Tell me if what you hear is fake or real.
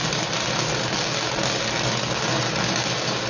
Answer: real